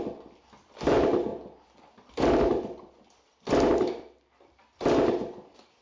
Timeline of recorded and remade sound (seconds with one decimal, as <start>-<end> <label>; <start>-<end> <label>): 0.0-1.3 recorded; 1.3-4.8 remade; 4.8-5.8 recorded